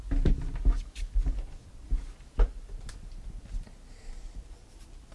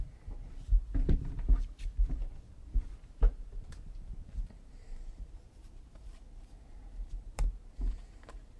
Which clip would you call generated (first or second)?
second